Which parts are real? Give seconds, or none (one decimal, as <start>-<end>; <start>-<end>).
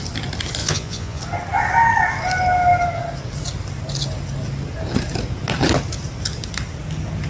0.0-0.6; 1.2-7.3